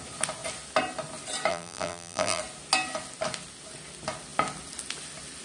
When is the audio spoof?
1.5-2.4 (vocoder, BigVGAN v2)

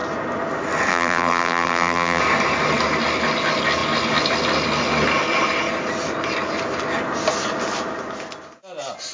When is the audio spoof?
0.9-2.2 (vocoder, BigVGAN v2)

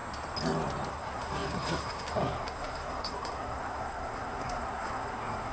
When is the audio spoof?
0.9-5.5 (codec, SNAC)